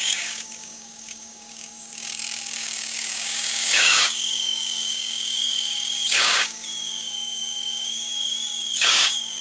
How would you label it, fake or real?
fake